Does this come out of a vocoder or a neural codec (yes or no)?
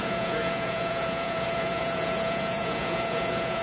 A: yes